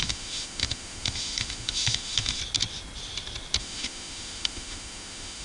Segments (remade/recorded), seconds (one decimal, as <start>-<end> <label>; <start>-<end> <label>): 0.0-2.4 remade; 2.4-3.6 recorded; 3.6-5.4 remade